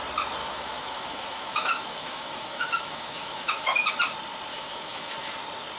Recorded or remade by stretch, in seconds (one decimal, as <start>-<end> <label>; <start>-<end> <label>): 0.0-0.4 recorded; 0.4-3.9 remade; 3.9-4.5 recorded; 4.5-5.1 remade; 5.1-5.8 recorded